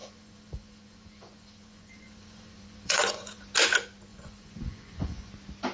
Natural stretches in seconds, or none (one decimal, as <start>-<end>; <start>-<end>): 3.4-4.1; 5.3-5.7